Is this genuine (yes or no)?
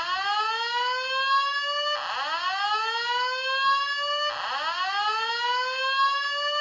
yes